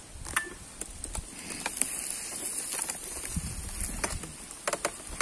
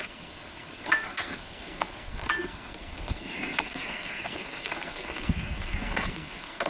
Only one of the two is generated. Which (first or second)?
second